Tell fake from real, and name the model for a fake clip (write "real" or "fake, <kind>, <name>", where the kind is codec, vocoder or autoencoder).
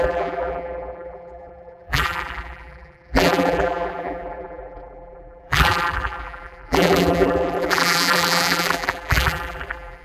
fake, vocoder, BigVGAN v2